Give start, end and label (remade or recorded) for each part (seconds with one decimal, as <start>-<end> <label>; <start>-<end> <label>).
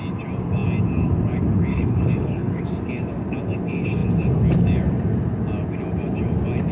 0.0-1.7 recorded; 1.7-2.6 remade; 2.6-6.7 recorded